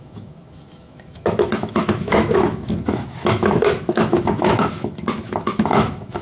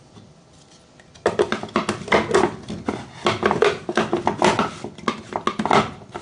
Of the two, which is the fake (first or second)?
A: first